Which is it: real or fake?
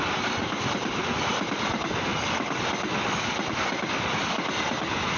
real